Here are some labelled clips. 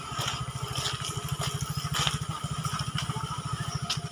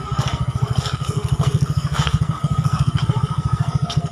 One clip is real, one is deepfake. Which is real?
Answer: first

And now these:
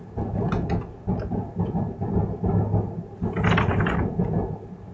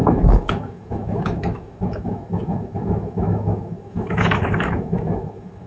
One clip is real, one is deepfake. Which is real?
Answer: first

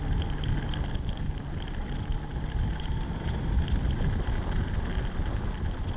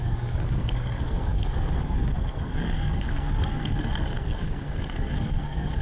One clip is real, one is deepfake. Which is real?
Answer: first